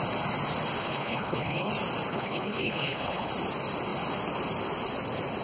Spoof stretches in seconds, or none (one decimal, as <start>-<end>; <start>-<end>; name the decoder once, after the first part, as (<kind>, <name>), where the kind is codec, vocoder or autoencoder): 0.8-1.7 (codec, HILCodec); 2.1-3.3